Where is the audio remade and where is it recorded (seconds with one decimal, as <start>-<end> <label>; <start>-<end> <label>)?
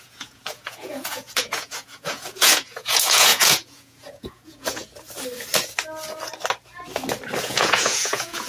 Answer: 0.0-4.8 remade; 4.8-7.4 recorded; 7.4-8.5 remade